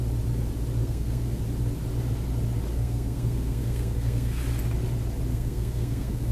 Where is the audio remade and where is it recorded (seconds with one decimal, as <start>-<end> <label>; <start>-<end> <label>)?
0.0-0.8 recorded; 0.8-1.4 remade; 1.4-2.7 recorded; 2.7-4.4 remade; 4.4-5.3 recorded; 5.3-6.3 remade